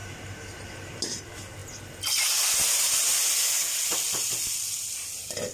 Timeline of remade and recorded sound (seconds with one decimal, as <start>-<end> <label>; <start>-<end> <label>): 0.0-0.7 remade; 0.7-5.5 recorded